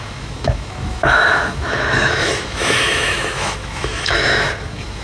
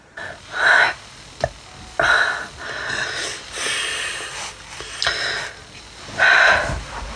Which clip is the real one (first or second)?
second